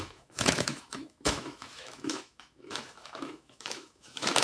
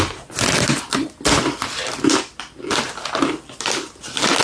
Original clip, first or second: second